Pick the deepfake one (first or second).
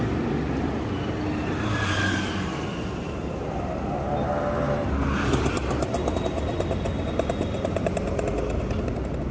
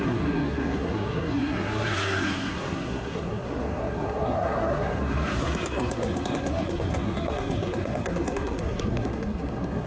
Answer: second